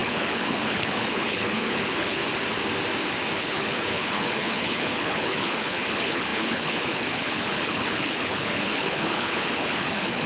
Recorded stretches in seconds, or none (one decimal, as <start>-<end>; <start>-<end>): 2.2-3.4